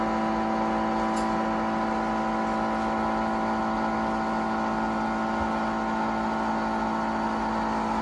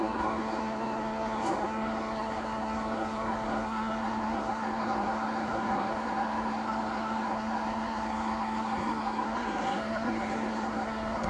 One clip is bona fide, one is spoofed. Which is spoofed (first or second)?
second